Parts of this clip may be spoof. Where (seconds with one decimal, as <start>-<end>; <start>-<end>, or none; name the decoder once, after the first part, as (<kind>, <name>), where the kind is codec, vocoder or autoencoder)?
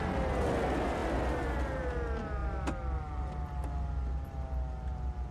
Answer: none